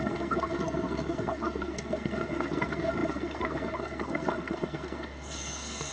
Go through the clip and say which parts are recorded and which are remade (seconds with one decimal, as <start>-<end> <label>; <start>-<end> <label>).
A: 0.0-5.9 remade